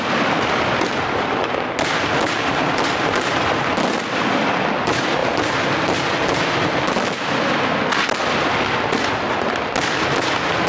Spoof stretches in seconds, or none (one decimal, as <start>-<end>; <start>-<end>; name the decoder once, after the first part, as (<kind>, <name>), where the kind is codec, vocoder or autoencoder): none